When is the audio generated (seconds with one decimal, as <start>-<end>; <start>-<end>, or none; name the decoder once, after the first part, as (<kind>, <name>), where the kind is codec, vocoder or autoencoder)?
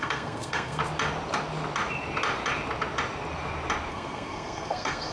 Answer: 0.0-0.8 (codec, SNAC); 3.9-5.1